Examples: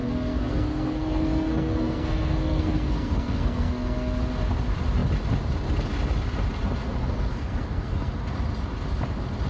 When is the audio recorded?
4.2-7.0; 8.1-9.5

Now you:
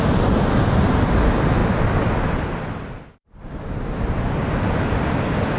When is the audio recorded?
0.0-5.6

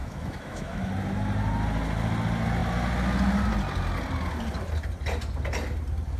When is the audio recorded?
0.9-6.2

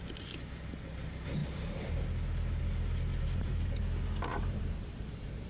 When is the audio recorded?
0.0-3.1; 3.8-4.3; 4.9-5.5

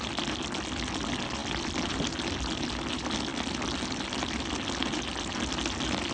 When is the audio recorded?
0.0-6.1